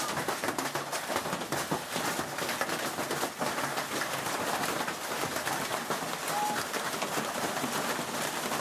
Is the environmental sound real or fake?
real